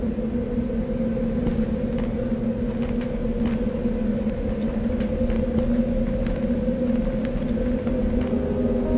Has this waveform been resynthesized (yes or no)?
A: no